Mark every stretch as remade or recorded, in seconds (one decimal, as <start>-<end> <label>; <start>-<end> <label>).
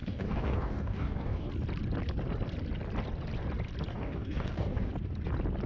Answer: 0.0-1.5 remade; 1.5-3.9 recorded; 3.9-4.9 remade; 4.9-5.7 recorded